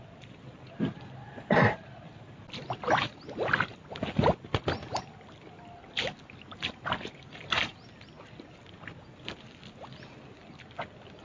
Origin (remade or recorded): recorded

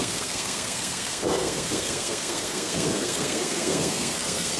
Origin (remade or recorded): remade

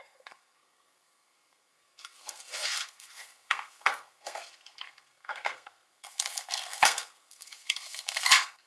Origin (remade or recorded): remade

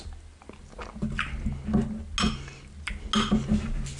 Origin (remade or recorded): recorded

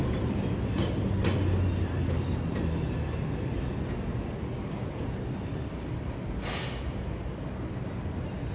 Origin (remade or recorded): recorded